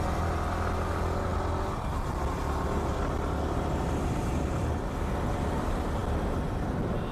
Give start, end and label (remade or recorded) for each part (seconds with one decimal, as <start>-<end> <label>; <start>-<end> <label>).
0.0-7.1 recorded